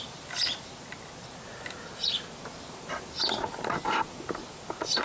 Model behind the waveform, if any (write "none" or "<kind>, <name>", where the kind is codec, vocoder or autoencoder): none